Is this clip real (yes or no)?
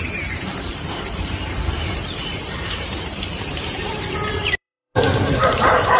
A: no